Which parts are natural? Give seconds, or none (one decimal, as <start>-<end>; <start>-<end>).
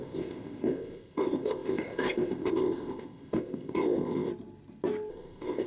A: 4.3-5.1